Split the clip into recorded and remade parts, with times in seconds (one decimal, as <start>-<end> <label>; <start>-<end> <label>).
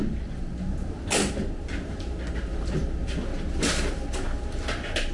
0.0-5.1 recorded